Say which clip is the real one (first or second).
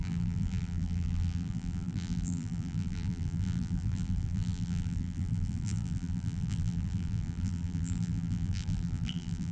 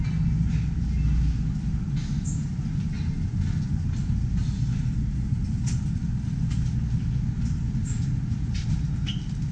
second